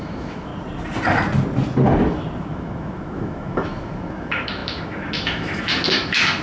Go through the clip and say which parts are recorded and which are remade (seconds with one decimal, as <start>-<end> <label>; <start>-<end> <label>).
0.0-0.5 remade; 0.5-2.4 recorded; 2.4-6.4 remade